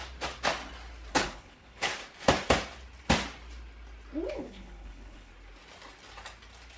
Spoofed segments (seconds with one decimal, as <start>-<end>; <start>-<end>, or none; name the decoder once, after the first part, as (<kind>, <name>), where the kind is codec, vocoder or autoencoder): 1.1-1.9 (codec, HILCodec); 4.3-5.3